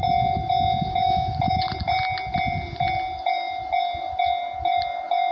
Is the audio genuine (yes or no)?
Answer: yes